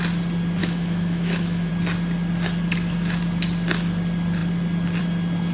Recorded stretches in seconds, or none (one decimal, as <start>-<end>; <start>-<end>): 0.0-0.6; 1.7-5.5